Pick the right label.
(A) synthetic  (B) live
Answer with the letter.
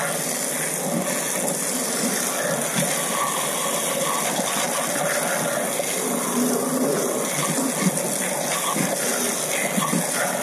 B